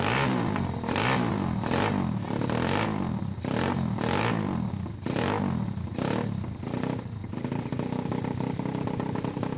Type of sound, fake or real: real